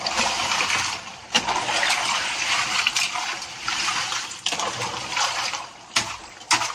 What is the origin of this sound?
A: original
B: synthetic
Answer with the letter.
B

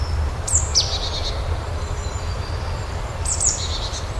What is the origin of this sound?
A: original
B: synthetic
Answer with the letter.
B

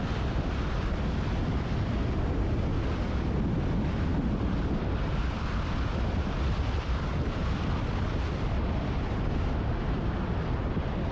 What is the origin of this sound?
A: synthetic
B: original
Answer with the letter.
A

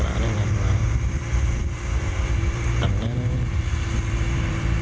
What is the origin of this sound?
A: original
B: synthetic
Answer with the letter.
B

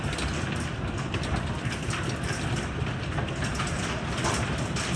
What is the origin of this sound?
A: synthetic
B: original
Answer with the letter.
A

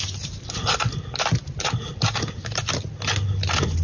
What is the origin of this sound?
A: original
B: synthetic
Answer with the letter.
A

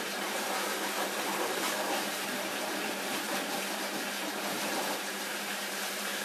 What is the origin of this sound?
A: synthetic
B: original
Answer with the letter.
A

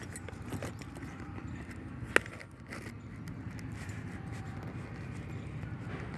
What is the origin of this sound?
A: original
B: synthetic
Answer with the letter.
A